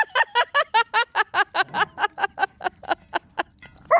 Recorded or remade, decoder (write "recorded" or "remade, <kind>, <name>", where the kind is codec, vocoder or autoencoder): recorded